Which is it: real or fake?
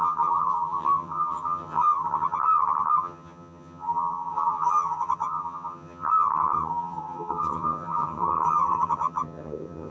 fake